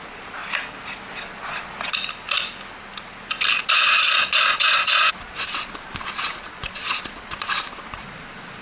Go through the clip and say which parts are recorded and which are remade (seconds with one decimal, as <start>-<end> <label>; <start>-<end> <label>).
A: 0.0-0.4 remade; 0.4-1.1 recorded; 1.1-1.7 remade; 1.7-3.7 recorded; 3.7-8.6 remade